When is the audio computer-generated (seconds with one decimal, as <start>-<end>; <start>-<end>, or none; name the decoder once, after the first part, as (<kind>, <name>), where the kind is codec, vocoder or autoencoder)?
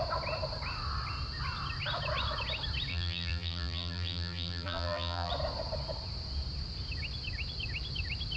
2.9-5.3 (vocoder, BigVGAN v2)